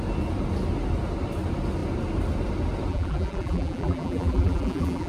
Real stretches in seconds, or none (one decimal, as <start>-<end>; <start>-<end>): 0.0-2.9